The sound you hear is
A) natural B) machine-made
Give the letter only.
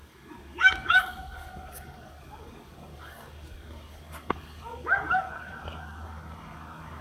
B